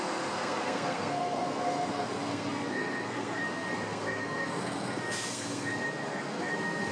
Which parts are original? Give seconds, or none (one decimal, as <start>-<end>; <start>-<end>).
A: none